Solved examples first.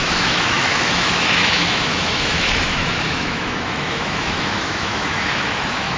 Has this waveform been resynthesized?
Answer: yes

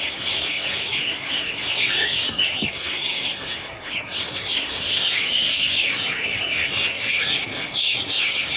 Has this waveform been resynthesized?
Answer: yes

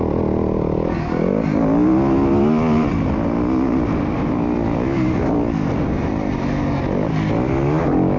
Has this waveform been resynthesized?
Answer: no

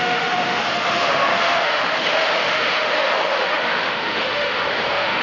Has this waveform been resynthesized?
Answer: yes